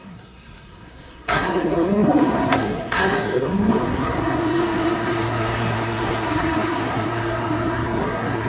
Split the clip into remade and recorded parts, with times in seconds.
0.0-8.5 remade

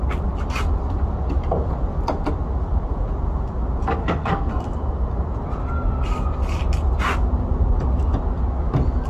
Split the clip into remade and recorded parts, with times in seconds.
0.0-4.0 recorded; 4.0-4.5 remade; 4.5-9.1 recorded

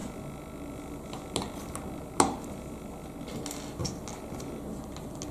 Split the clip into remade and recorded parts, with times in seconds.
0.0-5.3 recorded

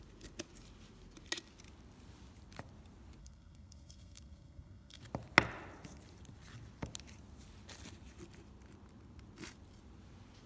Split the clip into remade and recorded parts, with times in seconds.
0.0-3.2 recorded; 3.2-5.0 remade; 5.0-10.5 recorded

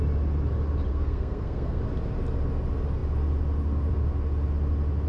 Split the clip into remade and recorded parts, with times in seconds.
0.0-0.9 recorded; 0.9-1.8 remade; 1.8-5.1 recorded

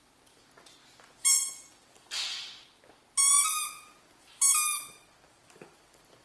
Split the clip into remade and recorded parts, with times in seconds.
0.0-6.2 recorded

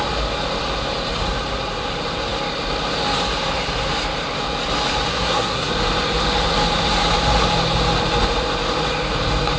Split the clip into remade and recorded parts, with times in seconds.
0.0-5.1 recorded; 5.1-5.7 remade; 5.7-9.6 recorded